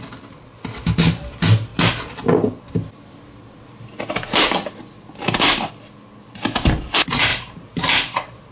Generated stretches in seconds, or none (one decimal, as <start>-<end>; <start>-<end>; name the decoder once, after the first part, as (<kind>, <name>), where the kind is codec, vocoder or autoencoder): 7.3-8.5 (vocoder, BigVGAN v2)